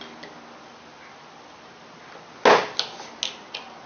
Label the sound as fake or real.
real